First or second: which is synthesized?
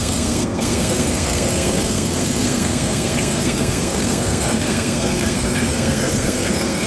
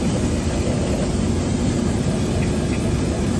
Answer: first